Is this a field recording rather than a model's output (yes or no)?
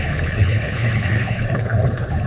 no